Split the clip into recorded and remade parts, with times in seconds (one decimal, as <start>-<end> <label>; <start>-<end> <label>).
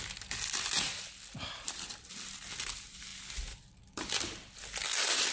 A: 0.0-5.3 recorded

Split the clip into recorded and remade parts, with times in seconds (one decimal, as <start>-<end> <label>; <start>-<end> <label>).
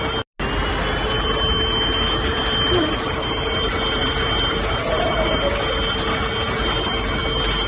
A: 0.0-2.3 recorded; 2.3-3.3 remade; 3.3-4.0 recorded; 4.0-6.2 remade; 6.2-7.7 recorded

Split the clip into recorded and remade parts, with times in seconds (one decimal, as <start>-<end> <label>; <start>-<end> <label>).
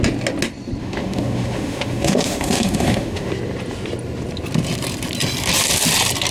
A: 0.0-0.8 recorded; 0.8-3.3 remade; 3.3-6.3 recorded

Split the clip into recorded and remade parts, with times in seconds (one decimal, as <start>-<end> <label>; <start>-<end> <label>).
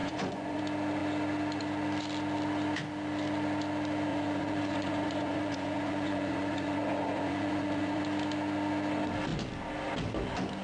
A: 0.0-0.6 remade; 0.6-4.1 recorded; 4.1-8.0 remade; 8.0-10.6 recorded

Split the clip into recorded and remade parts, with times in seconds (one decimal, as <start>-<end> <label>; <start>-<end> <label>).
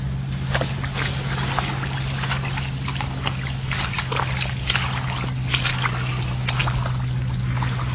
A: 0.0-7.9 recorded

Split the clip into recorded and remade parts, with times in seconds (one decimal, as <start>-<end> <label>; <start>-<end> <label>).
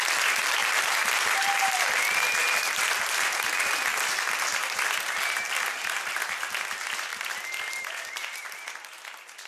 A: 0.0-9.5 recorded